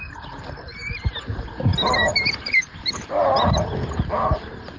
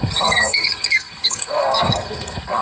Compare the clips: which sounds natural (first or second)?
first